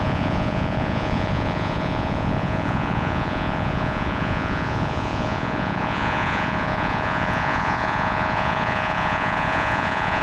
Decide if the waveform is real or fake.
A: fake